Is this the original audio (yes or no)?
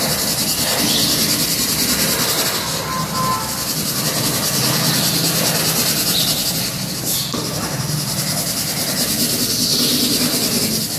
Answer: yes